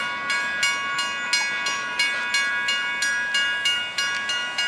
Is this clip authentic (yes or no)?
yes